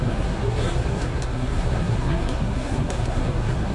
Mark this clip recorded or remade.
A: remade